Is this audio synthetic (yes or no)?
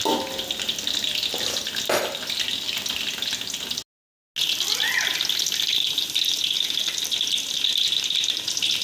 no